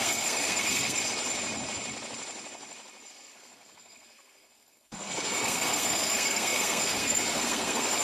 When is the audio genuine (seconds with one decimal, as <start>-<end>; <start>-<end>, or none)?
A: 1.0-3.1